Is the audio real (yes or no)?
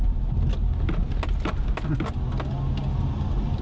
yes